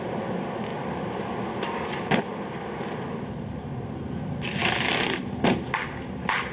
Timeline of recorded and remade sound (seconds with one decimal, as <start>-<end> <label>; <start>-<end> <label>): 0.0-6.5 recorded